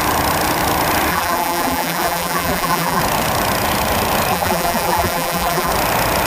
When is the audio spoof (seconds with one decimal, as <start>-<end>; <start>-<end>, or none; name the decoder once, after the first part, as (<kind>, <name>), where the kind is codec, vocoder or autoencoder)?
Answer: 1.1-3.0 (vocoder, BigVGAN v2); 4.3-5.7